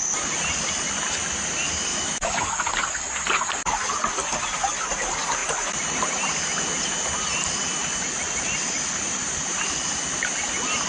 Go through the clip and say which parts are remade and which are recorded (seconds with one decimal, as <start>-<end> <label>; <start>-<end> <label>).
0.0-1.9 recorded; 1.9-2.5 remade; 2.5-10.9 recorded